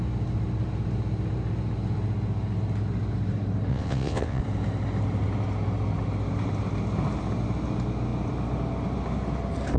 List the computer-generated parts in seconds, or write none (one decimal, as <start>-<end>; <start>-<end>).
3.7-4.4